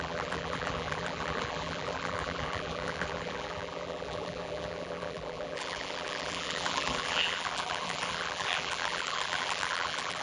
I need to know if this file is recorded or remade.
remade